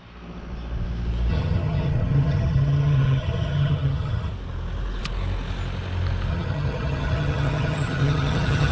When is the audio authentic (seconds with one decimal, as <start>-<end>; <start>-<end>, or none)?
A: 0.0-1.3; 4.3-6.3